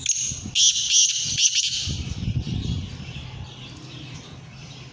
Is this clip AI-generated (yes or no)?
no